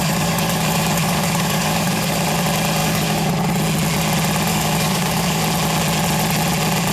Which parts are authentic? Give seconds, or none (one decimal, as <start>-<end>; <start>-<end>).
2.3-2.8; 3.3-4.5; 5.4-6.9